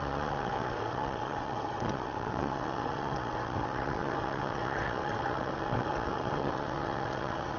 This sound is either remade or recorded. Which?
remade